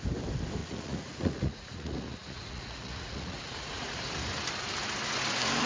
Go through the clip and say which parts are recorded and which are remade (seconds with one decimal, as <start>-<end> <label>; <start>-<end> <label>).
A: 0.0-0.6 recorded; 0.6-4.0 remade; 4.0-5.7 recorded

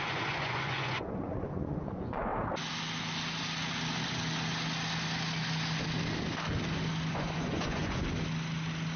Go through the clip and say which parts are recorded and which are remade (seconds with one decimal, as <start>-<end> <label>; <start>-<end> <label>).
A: 0.0-2.3 remade; 2.3-7.1 recorded; 7.1-8.0 remade; 8.0-9.0 recorded

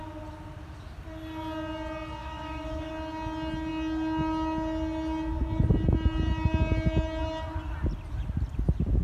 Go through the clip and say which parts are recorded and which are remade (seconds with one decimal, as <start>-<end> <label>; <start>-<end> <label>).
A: 0.0-2.2 recorded; 2.2-2.9 remade; 2.9-9.0 recorded

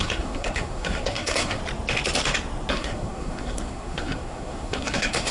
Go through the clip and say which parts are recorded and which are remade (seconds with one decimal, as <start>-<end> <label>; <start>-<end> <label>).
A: 0.0-1.6 remade; 1.6-2.7 recorded; 2.7-5.3 remade

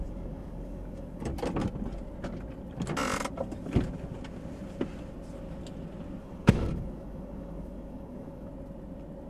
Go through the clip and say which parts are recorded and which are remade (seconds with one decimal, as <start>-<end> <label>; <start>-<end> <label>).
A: 0.0-1.3 remade; 1.3-6.2 recorded; 6.2-8.5 remade; 8.5-9.3 recorded

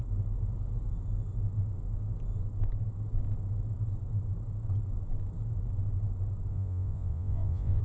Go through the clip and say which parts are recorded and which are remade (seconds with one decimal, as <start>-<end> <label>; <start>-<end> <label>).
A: 0.0-6.5 recorded; 6.5-7.8 remade